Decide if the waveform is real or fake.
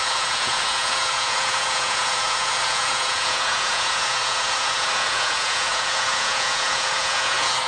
fake